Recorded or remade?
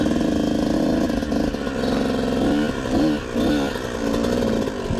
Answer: recorded